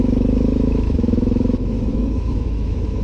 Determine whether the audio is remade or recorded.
remade